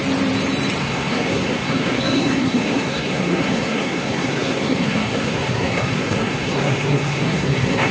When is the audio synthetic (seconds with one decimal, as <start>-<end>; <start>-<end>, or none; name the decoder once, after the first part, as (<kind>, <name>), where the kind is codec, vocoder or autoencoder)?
0.8-7.9 (codec, SNAC)